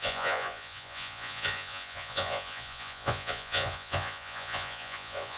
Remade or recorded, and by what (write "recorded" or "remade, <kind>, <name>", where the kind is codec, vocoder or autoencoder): remade, vocoder, Vocos